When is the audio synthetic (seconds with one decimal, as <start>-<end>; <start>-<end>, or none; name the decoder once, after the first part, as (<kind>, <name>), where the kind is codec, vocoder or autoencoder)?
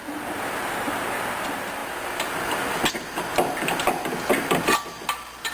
none